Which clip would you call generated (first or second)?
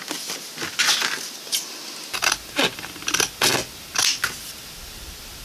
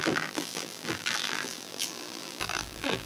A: second